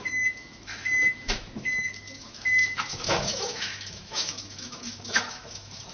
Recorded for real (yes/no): no